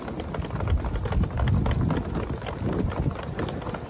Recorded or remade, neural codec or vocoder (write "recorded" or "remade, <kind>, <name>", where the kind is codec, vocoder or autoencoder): recorded